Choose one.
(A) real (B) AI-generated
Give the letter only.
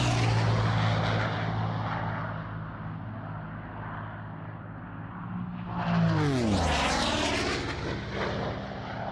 A